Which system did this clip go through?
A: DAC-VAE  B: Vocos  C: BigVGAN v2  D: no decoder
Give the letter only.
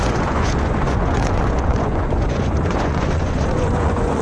B